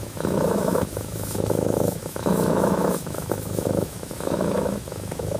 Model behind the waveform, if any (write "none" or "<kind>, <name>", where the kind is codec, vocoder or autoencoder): autoencoder, DAC-VAE